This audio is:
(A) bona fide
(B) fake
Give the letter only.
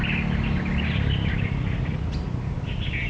A